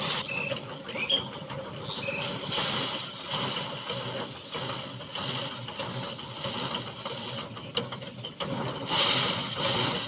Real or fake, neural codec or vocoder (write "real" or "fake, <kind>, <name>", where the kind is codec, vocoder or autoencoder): real